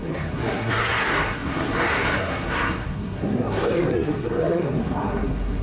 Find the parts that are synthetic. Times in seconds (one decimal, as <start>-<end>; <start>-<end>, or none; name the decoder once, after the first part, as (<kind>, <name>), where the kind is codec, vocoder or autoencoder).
0.0-5.6 (codec, SNAC)